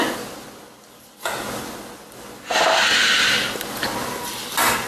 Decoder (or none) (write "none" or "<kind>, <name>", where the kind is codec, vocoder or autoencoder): none